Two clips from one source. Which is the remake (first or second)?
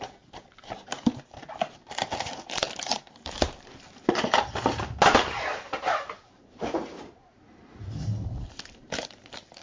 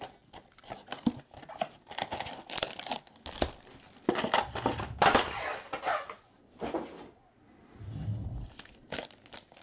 first